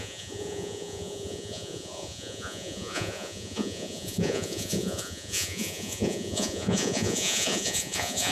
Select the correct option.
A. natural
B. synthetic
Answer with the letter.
B